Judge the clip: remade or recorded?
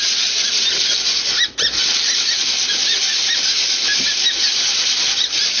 recorded